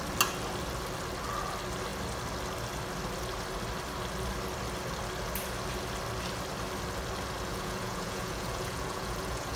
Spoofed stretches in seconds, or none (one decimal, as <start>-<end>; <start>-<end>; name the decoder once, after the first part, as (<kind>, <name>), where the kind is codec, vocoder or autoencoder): 7.5-9.6 (vocoder, Vocos)